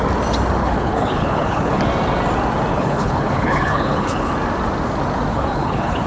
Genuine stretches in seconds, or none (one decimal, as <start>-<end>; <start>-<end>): 0.0-0.6; 1.8-2.7; 4.3-5.3